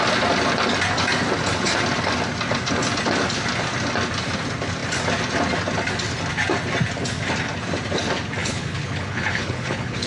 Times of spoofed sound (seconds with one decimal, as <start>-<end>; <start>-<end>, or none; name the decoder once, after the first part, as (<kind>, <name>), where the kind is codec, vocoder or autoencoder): 8.4-10.1 (codec, HILCodec)

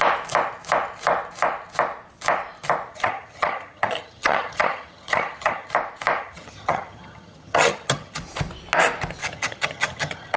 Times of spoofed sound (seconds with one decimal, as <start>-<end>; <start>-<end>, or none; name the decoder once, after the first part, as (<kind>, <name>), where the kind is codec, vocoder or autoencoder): 2.9-5.7 (vocoder, HiFi-GAN); 6.2-8.2; 9.2-10.4

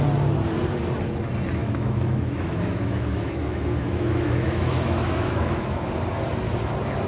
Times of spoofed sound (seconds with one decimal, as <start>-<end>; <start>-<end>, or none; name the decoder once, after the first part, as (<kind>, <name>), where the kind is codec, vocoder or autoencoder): 1.6-5.9 (autoencoder, DAC-VAE)

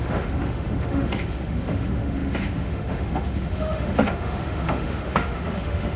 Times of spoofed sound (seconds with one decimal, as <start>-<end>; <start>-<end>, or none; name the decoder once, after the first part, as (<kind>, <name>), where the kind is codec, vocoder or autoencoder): 0.0-6.0 (autoencoder, DAC-VAE)

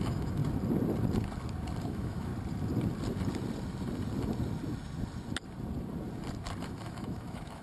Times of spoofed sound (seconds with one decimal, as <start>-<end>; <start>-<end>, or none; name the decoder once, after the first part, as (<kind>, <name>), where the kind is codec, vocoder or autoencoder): 0.0-0.4 (autoencoder, DAC-VAE); 1.8-2.3; 6.6-7.6